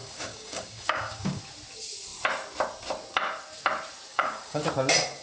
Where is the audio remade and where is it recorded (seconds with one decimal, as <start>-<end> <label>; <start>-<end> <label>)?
0.0-1.4 remade; 1.4-4.1 recorded; 4.1-4.6 remade; 4.6-5.2 recorded